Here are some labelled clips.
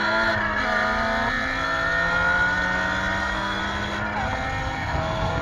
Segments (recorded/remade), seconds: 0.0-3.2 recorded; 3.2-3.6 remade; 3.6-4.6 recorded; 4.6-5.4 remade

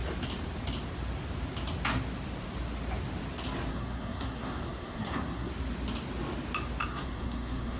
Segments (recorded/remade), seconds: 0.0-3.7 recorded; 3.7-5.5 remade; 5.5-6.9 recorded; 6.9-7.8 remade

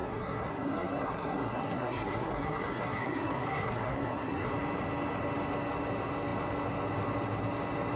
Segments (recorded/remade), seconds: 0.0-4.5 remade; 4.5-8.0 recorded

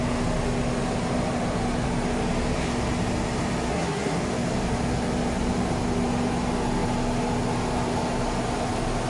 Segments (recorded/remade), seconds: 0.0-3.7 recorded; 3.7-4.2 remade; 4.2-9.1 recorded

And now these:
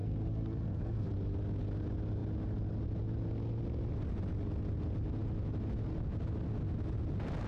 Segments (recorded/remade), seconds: 0.0-1.1 remade; 1.1-7.5 recorded